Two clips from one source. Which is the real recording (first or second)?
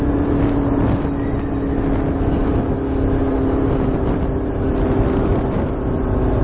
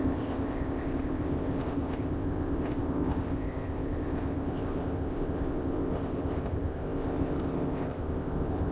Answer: first